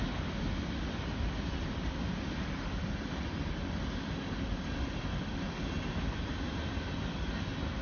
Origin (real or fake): real